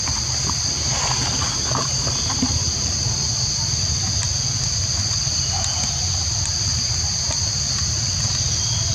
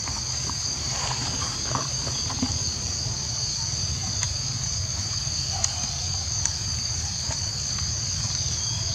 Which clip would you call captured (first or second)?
first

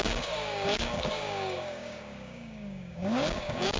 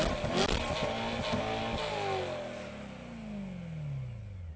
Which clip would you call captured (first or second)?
second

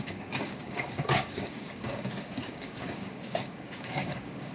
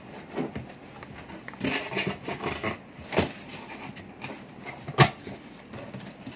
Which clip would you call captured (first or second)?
second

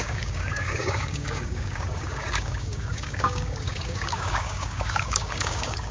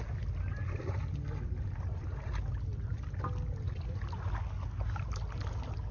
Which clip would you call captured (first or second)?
second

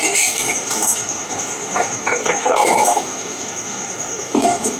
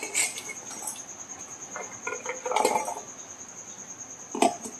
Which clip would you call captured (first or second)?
second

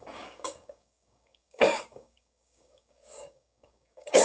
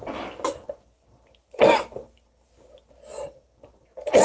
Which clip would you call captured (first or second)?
second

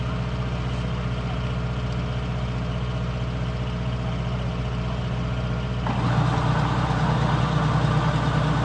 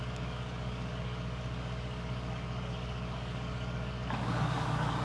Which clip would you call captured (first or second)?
first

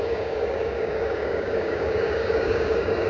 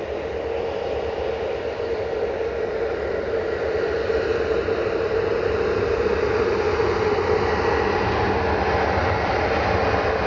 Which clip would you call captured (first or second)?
second